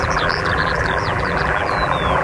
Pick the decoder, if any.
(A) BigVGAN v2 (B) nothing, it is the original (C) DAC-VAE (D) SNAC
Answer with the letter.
A